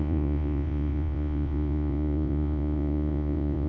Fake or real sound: fake